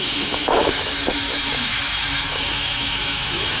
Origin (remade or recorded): remade